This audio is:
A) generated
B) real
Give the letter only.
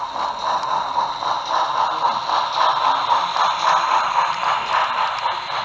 B